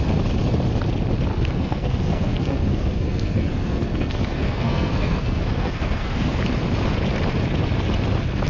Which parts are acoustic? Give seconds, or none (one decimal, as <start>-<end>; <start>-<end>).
0.0-1.3; 6.4-8.5